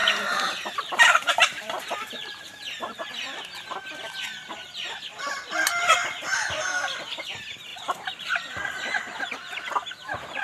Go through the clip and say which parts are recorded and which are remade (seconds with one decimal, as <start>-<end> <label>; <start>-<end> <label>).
0.0-3.1 remade; 3.1-7.7 recorded; 7.7-8.3 remade; 8.3-10.4 recorded